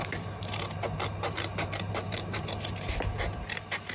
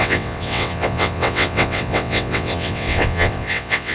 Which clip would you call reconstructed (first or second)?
second